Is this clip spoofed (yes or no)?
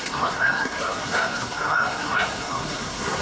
yes